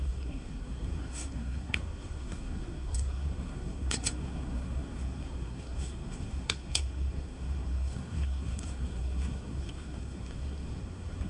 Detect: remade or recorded remade